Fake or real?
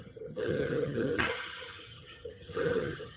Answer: fake